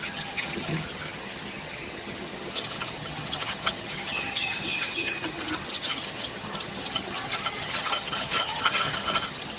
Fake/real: fake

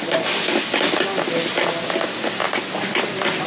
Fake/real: real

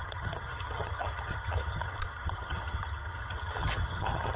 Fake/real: fake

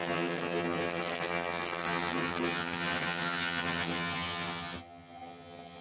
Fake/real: fake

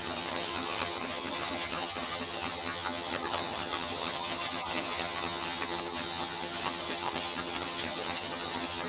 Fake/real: fake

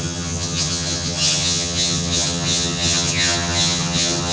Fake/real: fake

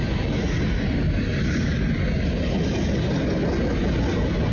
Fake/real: real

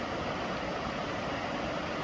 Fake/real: real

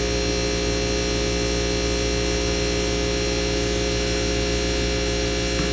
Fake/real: real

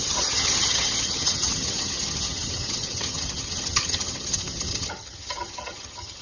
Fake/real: fake